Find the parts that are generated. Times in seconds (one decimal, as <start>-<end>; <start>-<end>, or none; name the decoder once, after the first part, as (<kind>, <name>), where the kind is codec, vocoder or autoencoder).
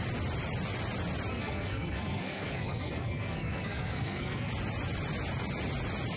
1.3-4.5 (codec, SNAC)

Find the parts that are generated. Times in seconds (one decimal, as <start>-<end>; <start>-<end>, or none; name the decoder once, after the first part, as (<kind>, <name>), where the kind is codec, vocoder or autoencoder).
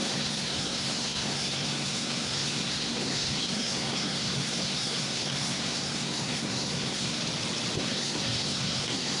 0.0-7.2 (codec, SNAC); 7.8-9.2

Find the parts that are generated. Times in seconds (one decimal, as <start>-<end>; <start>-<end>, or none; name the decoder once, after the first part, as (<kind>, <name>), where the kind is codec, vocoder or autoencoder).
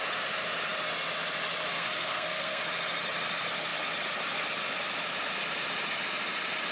1.7-2.6 (codec, SNAC)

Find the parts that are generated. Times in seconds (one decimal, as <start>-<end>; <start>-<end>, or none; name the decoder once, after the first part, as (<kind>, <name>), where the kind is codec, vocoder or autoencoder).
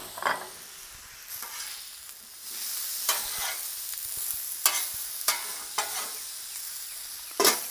none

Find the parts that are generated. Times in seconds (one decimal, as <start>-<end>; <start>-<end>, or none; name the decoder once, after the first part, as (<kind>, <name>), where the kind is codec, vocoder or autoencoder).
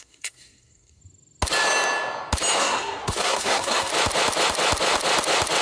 0.0-1.0 (codec, SNAC); 2.6-3.9